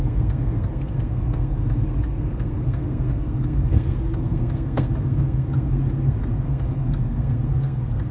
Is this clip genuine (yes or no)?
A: no